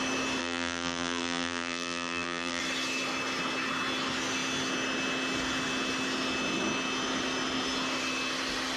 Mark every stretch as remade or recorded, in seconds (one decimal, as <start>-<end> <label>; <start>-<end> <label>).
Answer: 0.0-0.4 recorded; 0.4-2.6 remade; 2.6-8.8 recorded